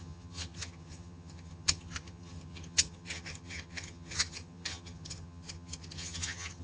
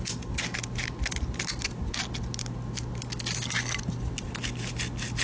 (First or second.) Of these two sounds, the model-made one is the first